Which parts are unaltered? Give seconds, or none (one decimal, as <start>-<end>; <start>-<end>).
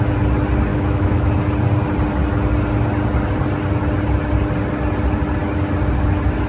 0.0-0.7; 1.3-6.5